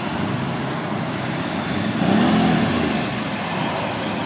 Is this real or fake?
real